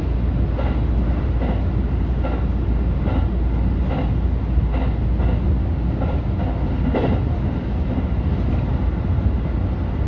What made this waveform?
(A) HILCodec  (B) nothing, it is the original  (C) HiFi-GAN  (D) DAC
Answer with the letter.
B